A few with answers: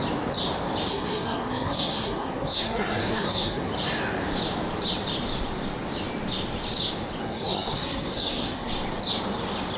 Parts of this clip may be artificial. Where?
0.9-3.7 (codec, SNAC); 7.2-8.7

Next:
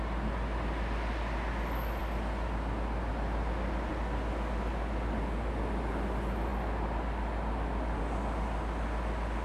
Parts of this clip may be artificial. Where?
none

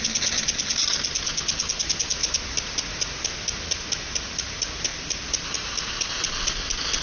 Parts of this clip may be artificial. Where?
4.9-5.5 (vocoder, BigVGAN v2)

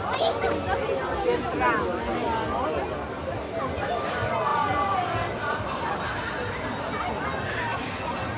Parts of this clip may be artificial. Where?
none

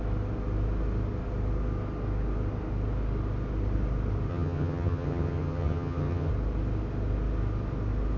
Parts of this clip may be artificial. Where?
4.3-6.3 (vocoder, HiFi-GAN)

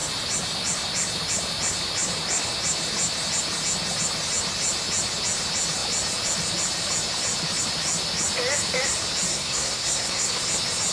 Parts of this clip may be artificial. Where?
9.3-10.4 (codec, SNAC)

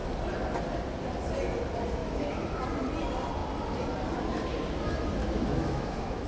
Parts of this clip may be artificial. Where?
2.0-2.6 (autoencoder, DAC-VAE); 5.2-6.3

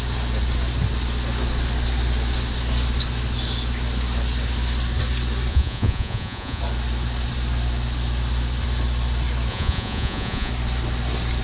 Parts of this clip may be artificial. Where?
5.5-6.6 (vocoder, Vocos); 9.5-10.5